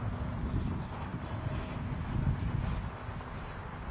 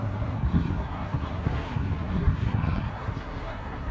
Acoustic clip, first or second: first